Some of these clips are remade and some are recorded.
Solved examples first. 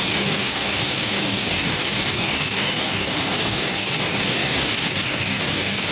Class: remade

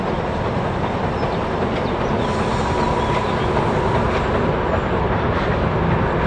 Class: recorded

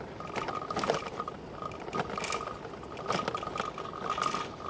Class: recorded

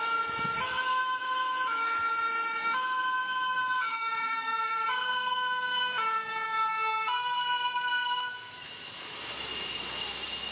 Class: remade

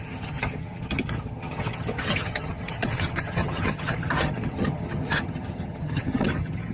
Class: remade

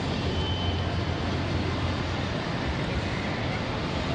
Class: remade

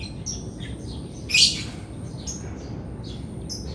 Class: recorded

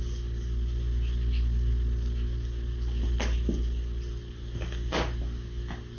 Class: recorded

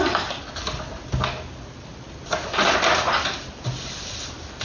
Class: recorded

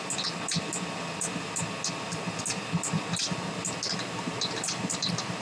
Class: recorded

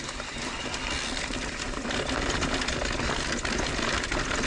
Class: remade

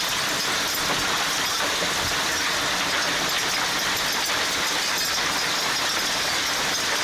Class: recorded